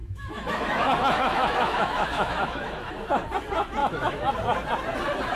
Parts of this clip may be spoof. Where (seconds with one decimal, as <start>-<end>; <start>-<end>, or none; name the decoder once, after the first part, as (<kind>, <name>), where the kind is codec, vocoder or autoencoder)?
0.0-2.9 (autoencoder, DAC-VAE); 3.8-4.3